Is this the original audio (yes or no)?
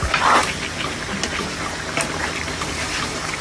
no